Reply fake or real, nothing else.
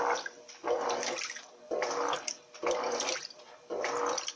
real